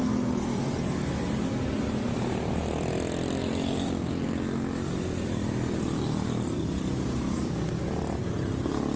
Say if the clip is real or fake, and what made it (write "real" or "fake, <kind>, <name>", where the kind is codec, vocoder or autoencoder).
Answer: real